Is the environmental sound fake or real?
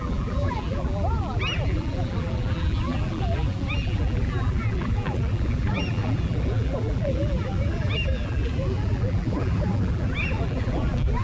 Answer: fake